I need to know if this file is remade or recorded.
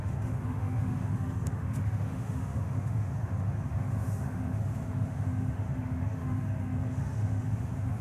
remade